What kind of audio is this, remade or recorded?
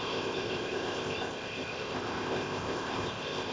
remade